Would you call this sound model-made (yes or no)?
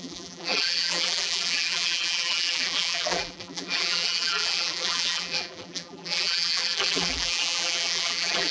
yes